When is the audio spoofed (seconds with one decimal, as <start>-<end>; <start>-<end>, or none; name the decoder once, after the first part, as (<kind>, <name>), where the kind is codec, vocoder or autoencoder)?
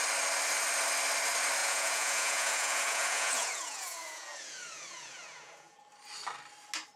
1.6-5.8 (vocoder, Vocos)